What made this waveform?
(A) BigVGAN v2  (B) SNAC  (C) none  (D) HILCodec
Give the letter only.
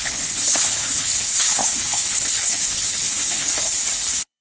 D